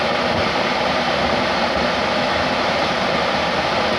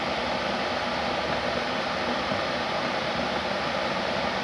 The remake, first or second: first